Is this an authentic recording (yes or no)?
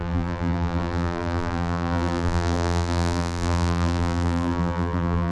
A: no